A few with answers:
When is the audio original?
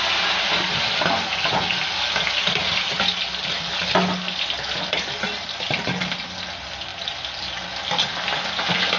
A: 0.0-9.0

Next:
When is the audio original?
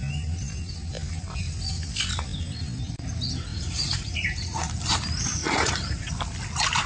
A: 0.0-3.5; 4.6-5.3; 6.1-6.9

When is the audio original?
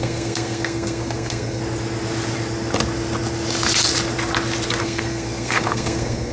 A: 1.6-4.8